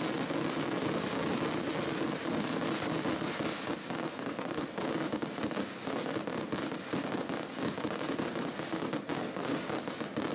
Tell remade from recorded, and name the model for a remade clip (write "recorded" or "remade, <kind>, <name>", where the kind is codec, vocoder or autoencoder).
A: recorded